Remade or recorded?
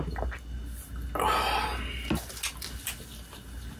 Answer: recorded